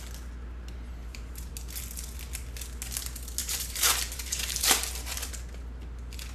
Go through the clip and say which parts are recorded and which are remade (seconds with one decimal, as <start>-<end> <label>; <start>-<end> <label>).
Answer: 0.0-1.0 recorded; 1.0-1.5 remade; 1.5-3.4 recorded; 3.4-5.3 remade; 5.3-6.3 recorded